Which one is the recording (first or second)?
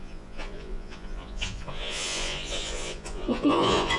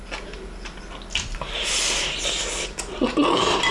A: second